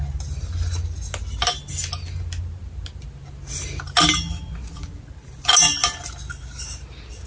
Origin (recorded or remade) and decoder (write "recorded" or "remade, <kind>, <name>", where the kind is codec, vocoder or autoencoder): recorded